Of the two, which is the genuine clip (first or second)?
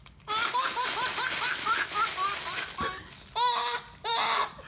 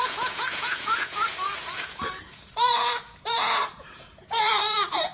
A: first